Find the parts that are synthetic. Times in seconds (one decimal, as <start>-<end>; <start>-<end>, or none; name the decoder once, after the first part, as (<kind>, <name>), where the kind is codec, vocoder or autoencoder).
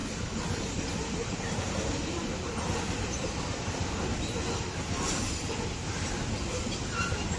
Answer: 0.0-0.7 (vocoder, BigVGAN v2); 2.2-4.0